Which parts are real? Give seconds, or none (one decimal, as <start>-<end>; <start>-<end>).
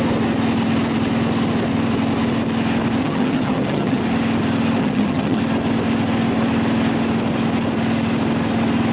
0.0-3.0; 4.0-4.8; 5.4-8.9